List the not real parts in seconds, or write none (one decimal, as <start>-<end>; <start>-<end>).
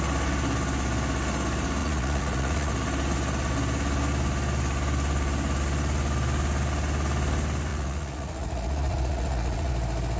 1.8-2.7; 7.7-9.7